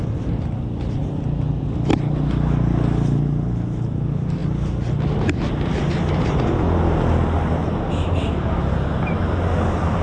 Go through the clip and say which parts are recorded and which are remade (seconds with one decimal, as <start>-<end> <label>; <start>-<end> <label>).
0.0-10.0 recorded